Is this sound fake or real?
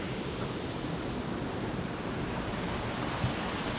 real